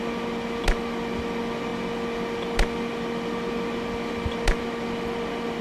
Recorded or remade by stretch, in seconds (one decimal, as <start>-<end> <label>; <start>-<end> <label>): 0.0-5.6 recorded